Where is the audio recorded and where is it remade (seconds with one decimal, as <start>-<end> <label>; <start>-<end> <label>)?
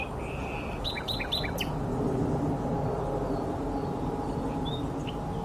0.0-5.4 recorded